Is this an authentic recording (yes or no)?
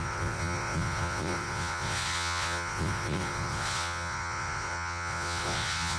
no